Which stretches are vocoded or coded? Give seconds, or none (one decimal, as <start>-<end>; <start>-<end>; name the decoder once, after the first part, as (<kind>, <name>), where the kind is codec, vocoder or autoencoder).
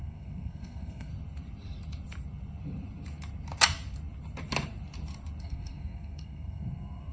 0.0-1.1 (codec, SNAC); 5.4-7.1